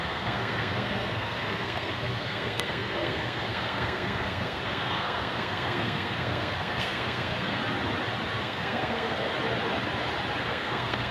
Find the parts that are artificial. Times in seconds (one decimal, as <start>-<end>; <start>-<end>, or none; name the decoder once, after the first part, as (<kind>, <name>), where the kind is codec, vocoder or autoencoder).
0.0-7.6 (codec, SNAC); 8.4-9.3; 10.4-11.1